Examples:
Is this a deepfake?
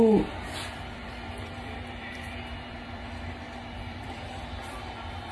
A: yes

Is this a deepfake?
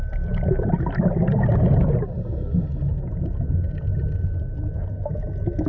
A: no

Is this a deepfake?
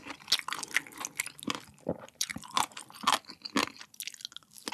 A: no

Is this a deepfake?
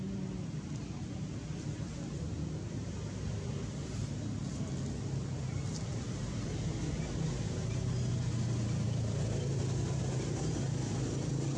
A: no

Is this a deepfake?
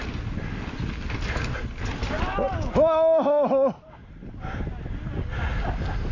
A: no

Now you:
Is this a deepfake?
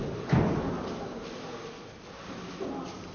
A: no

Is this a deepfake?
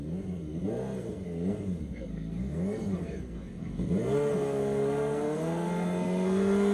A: yes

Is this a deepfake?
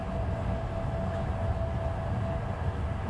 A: no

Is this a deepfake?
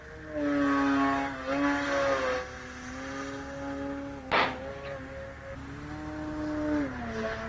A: no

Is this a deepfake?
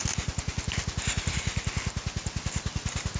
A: no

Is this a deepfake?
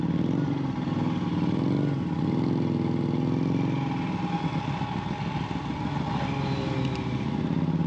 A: no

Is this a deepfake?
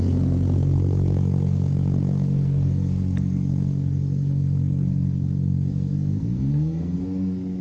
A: yes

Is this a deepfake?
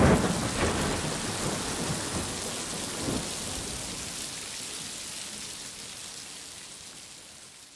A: no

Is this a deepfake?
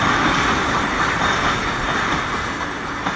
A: no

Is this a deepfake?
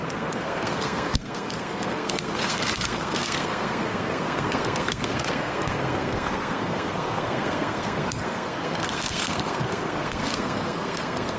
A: yes